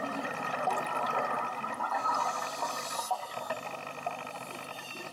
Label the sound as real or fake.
real